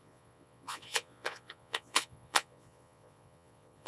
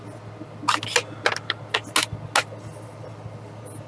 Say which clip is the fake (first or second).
first